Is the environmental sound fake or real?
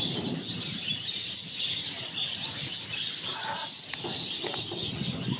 real